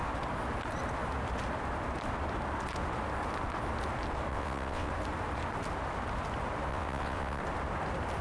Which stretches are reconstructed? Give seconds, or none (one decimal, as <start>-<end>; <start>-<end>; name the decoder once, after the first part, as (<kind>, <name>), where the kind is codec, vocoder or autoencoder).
4.3-4.9 (vocoder, WaveNeXt); 6.7-7.4